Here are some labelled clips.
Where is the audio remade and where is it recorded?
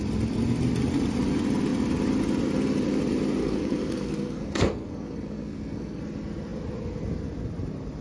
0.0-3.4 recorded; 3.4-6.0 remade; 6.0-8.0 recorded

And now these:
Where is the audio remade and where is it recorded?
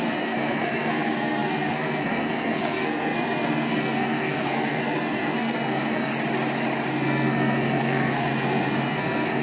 0.0-6.1 remade; 6.1-6.9 recorded; 6.9-9.4 remade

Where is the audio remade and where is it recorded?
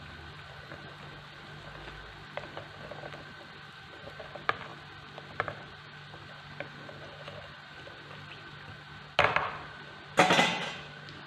0.0-11.3 recorded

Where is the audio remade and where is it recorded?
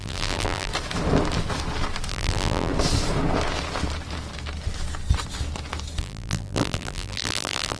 0.0-0.7 remade; 0.7-2.1 recorded; 2.1-2.7 remade; 2.7-6.0 recorded; 6.0-7.8 remade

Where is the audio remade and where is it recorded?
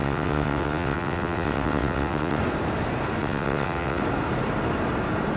0.0-2.4 remade; 2.4-3.2 recorded; 3.2-4.0 remade; 4.0-5.4 recorded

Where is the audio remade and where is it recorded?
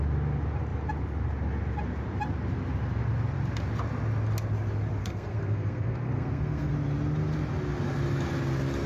0.0-5.0 recorded; 5.0-6.7 remade; 6.7-8.9 recorded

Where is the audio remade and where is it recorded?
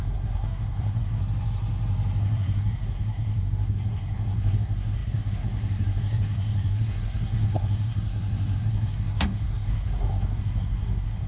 0.0-1.2 remade; 1.2-2.2 recorded; 2.2-11.3 remade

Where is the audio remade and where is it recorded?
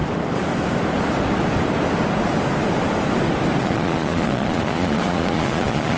0.0-3.6 recorded; 3.6-6.0 remade